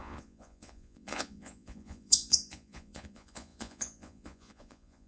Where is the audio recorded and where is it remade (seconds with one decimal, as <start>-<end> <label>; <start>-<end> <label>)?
0.0-5.1 remade